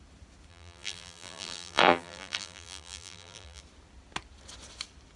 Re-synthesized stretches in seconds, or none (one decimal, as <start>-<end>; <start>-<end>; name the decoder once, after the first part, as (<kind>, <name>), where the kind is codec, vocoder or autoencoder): 0.5-3.6 (vocoder, BigVGAN v2)